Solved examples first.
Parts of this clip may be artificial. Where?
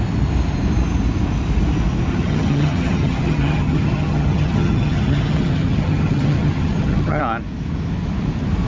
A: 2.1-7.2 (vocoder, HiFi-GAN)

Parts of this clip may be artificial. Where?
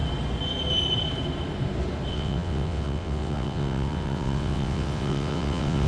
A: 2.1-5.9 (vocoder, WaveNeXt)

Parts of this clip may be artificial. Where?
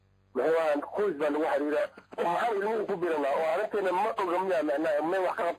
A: 1.8-2.4 (codec, SNAC)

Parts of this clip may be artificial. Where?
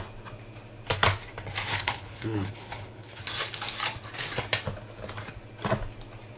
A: 1.7-3.2 (codec, HILCodec)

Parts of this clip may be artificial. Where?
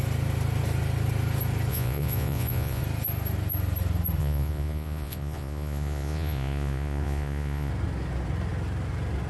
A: 1.7-2.8 (vocoder, Vocos); 4.2-7.7